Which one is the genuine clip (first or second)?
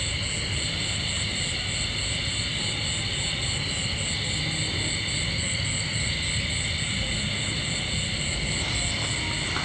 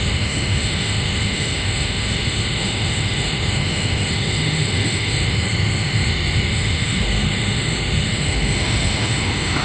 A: first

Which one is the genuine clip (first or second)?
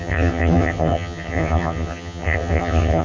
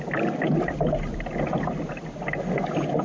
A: second